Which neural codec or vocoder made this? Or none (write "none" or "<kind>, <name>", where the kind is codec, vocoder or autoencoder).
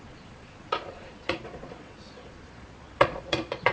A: vocoder, Vocos